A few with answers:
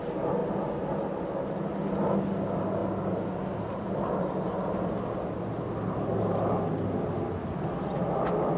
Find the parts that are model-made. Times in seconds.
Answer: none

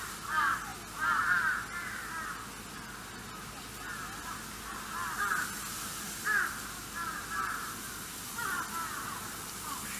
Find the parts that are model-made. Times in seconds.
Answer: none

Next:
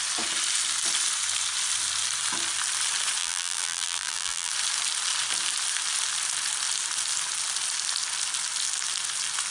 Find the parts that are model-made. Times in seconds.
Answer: 3.2-4.5

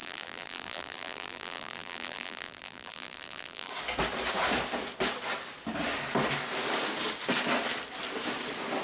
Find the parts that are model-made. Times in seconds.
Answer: 0.0-3.7

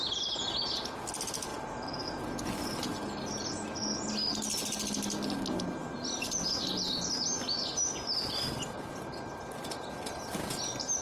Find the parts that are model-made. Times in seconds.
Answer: none

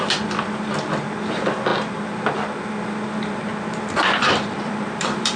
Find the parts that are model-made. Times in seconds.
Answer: 3.5-5.4